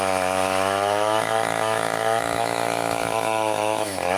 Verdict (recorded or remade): remade